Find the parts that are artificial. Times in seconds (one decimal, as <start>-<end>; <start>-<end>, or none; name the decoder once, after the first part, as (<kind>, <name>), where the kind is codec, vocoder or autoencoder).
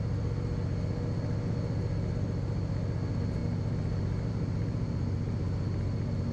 none